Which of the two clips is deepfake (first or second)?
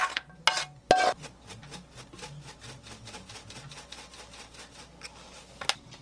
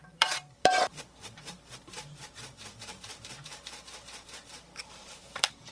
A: second